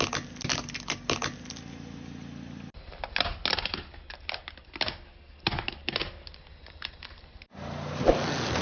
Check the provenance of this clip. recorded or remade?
recorded